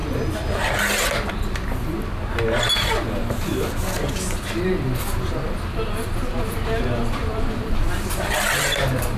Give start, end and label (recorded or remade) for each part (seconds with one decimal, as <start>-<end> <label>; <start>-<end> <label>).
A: 0.0-6.3 recorded; 6.3-9.2 remade

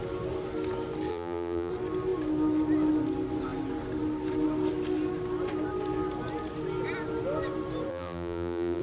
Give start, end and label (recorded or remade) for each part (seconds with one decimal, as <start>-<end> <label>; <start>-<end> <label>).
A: 0.0-1.1 recorded; 1.1-1.7 remade; 1.7-7.9 recorded; 7.9-8.8 remade

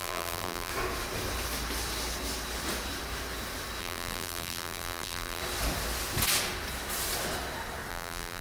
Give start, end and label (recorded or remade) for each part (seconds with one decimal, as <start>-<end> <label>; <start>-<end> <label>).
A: 0.0-0.7 remade; 0.7-3.8 recorded; 3.8-5.4 remade; 5.4-7.9 recorded; 7.9-8.4 remade

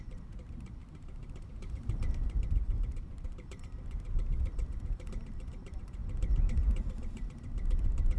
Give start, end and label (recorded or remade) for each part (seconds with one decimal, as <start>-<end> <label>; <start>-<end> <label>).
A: 0.0-8.2 remade